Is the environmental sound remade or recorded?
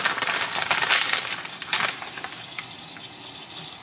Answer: recorded